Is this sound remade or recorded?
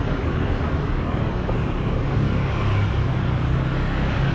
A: remade